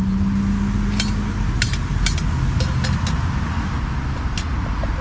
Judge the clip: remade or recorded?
recorded